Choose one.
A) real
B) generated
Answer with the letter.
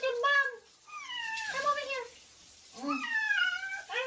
A